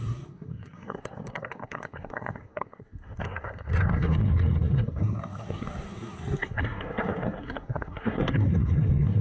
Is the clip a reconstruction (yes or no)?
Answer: yes